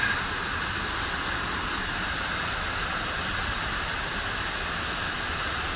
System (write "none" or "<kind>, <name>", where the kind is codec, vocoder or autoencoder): none